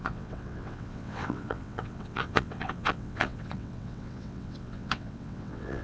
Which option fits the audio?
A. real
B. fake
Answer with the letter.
B